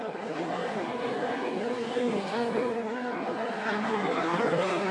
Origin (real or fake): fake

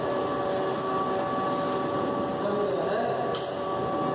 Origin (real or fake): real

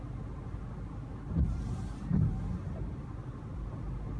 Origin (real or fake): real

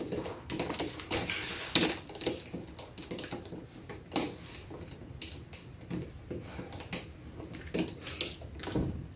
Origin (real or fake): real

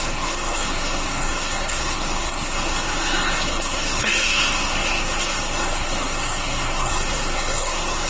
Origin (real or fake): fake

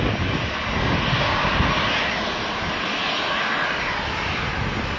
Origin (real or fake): real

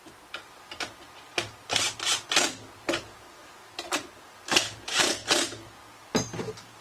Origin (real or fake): real